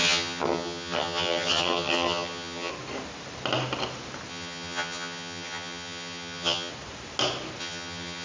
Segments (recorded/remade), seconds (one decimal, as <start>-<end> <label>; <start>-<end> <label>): 0.0-2.7 remade; 2.7-4.3 recorded; 4.3-6.7 remade; 6.7-7.6 recorded; 7.6-8.2 remade